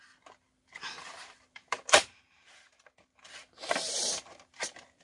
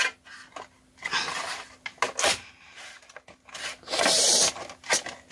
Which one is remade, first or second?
first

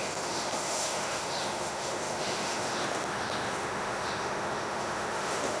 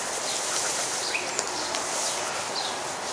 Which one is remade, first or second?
first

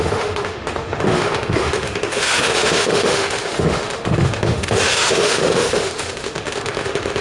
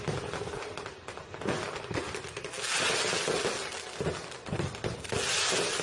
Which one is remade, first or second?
first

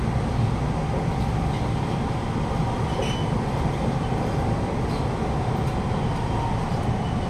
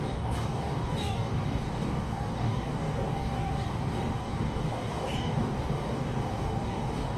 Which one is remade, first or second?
second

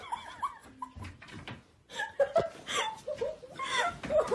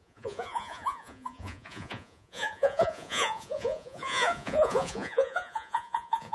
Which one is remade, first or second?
second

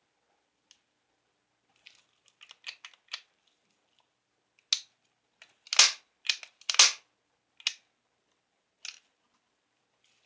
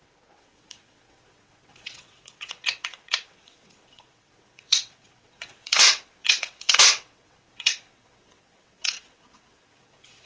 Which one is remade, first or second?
second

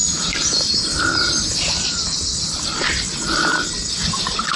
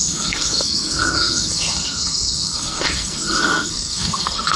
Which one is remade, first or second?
second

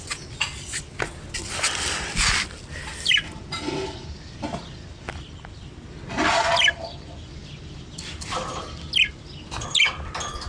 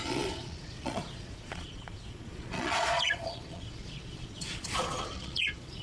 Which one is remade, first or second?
second